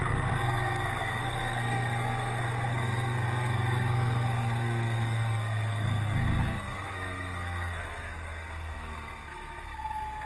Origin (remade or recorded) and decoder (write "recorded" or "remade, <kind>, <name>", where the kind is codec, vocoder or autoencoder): remade, codec, SNAC